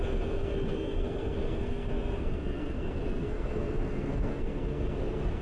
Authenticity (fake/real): fake